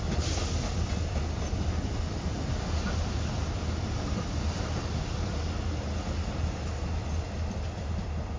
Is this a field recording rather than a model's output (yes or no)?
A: yes